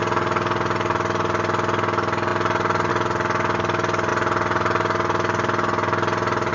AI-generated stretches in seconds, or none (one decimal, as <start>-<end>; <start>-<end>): none